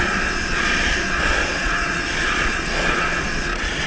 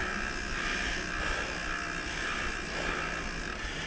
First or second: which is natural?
second